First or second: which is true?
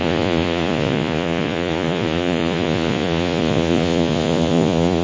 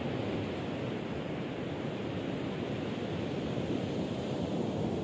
second